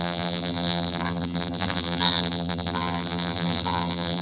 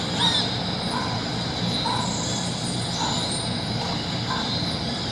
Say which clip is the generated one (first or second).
first